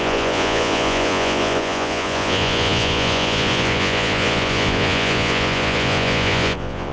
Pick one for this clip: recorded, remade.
remade